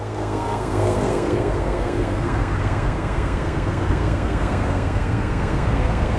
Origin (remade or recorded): remade